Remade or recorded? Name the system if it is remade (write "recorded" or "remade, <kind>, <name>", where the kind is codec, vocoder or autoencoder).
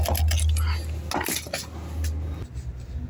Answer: recorded